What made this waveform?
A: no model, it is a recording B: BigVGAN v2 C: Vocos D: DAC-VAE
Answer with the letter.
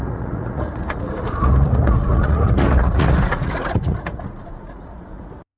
C